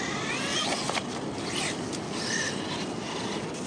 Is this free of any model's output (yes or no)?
yes